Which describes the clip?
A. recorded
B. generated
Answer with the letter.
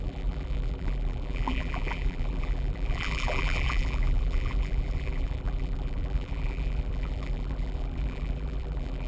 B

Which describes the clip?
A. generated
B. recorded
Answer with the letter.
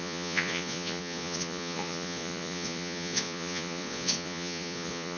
A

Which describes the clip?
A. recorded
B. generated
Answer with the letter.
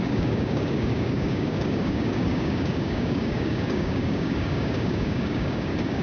B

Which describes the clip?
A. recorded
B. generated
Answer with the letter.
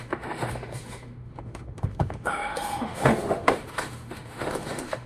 B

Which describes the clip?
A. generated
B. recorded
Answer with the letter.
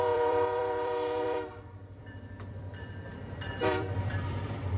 A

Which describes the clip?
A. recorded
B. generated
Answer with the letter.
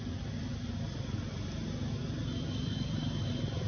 A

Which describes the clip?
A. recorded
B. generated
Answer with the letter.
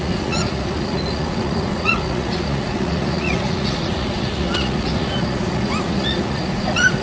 B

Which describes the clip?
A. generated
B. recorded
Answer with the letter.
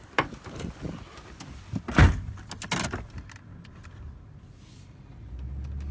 B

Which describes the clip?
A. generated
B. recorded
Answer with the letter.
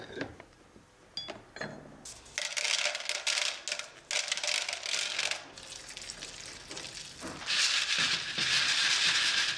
B